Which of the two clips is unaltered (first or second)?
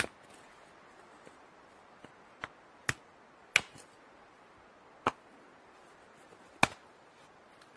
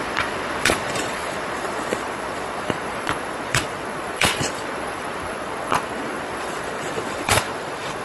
first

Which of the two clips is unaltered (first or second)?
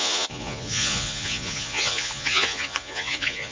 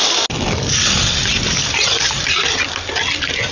second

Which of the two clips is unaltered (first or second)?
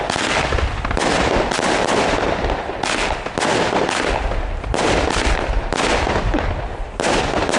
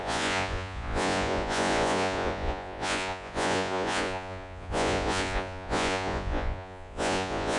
first